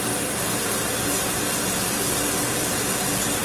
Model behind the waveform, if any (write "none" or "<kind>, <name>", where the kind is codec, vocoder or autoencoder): none